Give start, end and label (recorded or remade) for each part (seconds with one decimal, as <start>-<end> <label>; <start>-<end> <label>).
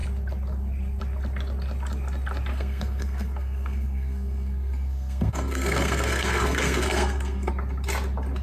0.0-2.5 recorded; 2.5-7.5 remade; 7.5-8.4 recorded